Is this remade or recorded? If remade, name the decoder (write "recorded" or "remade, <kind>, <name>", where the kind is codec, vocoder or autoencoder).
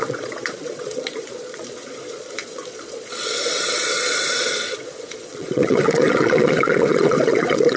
remade, vocoder, Vocos